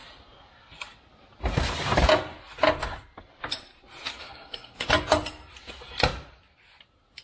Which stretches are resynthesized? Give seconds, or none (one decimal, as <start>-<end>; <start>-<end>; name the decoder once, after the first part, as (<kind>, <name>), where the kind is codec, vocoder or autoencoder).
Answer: 4.2-4.9 (codec, SNAC)